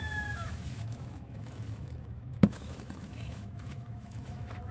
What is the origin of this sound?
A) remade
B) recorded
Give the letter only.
A